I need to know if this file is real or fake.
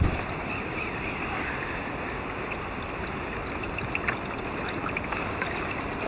fake